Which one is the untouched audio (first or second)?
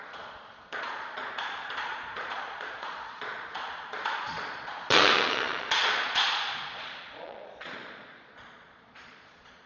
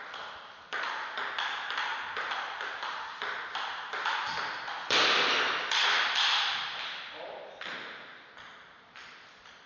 second